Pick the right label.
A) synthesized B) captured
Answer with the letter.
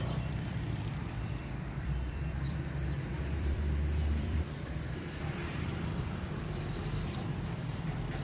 A